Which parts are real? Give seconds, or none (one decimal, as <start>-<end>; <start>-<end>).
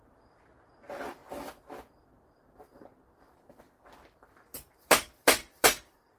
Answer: 0.0-4.5